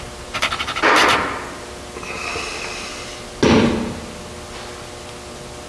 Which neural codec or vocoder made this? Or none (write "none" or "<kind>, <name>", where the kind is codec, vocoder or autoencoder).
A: none